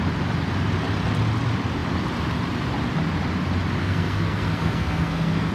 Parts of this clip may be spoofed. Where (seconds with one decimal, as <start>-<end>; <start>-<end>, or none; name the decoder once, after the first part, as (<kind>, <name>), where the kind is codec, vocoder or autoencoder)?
3.8-5.5 (codec, SNAC)